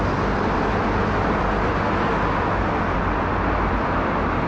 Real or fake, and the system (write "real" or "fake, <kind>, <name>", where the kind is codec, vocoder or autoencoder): real